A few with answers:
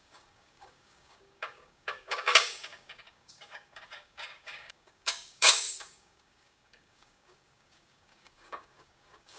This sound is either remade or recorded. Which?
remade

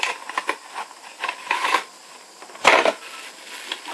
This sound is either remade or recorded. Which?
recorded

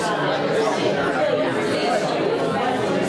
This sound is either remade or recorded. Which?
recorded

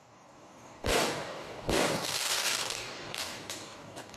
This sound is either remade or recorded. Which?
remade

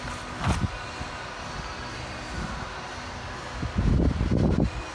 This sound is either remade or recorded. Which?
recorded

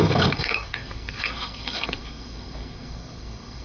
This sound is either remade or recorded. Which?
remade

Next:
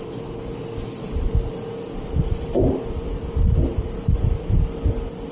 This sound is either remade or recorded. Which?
recorded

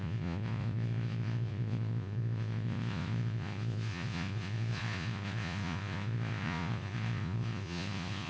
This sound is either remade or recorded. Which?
remade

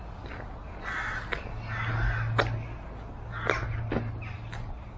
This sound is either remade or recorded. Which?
recorded